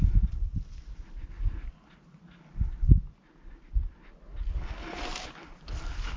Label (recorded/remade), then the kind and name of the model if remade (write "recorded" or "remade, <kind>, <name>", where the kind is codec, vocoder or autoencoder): recorded